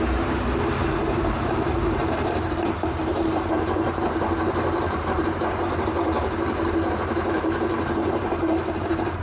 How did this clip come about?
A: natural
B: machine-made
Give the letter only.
B